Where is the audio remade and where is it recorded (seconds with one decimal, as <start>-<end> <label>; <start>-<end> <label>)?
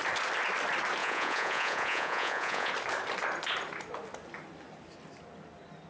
0.0-1.0 recorded; 1.0-2.7 remade; 2.7-5.9 recorded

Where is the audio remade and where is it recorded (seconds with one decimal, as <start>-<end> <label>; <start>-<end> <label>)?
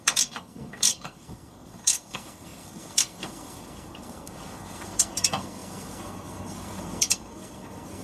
0.0-8.0 remade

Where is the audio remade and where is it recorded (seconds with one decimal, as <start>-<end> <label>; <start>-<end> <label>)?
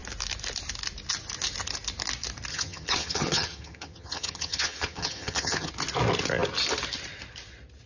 0.0-2.5 recorded; 2.5-5.7 remade; 5.7-7.9 recorded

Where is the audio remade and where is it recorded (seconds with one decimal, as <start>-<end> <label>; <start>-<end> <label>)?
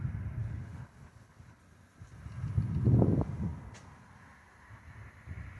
0.0-0.4 recorded; 0.4-1.6 remade; 1.6-5.6 recorded